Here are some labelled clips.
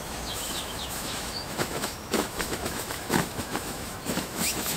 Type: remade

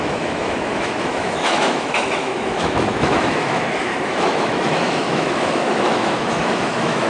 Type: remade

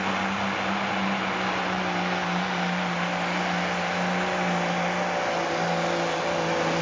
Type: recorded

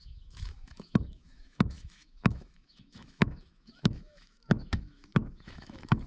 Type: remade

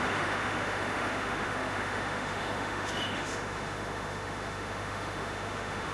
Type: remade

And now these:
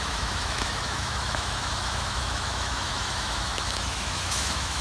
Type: remade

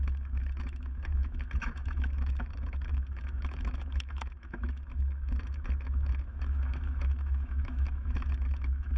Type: remade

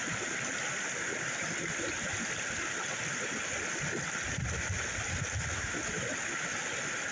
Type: recorded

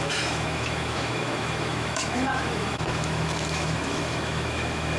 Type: remade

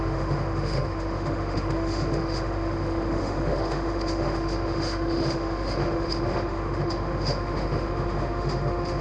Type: remade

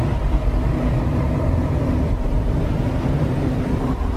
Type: recorded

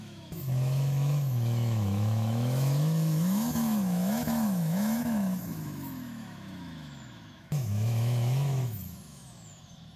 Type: remade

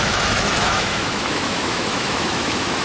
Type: remade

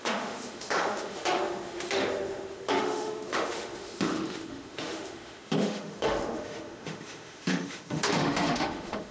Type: remade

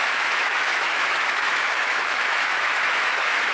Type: remade